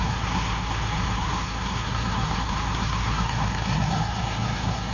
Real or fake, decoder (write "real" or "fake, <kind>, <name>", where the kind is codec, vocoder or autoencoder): fake, codec, SNAC